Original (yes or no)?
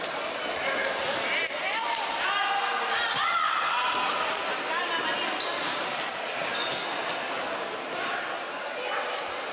yes